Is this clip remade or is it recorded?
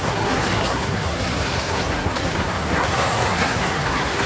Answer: remade